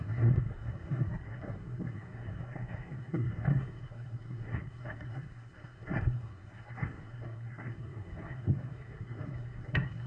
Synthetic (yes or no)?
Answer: yes